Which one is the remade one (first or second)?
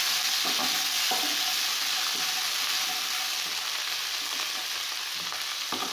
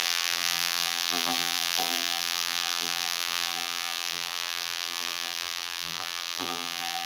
second